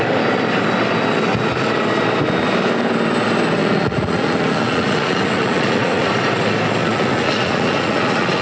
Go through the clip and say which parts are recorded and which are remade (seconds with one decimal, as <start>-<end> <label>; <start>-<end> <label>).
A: 0.0-3.6 recorded; 3.6-6.1 remade; 6.1-6.8 recorded; 6.8-8.4 remade